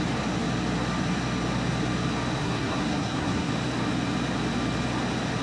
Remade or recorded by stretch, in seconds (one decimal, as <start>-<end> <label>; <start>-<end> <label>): 0.0-2.4 recorded; 2.4-3.5 remade; 3.5-5.4 recorded